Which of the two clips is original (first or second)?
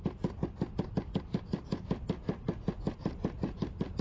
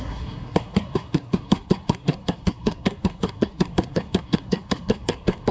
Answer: first